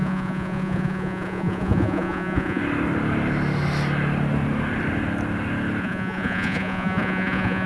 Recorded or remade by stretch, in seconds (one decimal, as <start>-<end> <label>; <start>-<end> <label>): 0.0-2.6 remade; 2.6-5.8 recorded; 5.8-7.7 remade